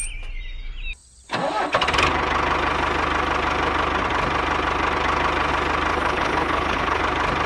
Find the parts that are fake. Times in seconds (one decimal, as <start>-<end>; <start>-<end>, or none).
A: 5.9-7.0